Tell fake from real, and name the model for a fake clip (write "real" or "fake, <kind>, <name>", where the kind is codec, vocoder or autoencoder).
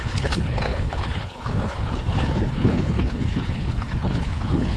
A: fake, codec, HILCodec